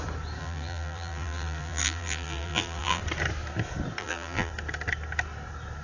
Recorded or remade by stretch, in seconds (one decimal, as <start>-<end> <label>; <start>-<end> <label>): 0.0-0.4 recorded; 0.4-3.0 remade; 3.0-4.0 recorded; 4.0-4.5 remade; 4.5-5.8 recorded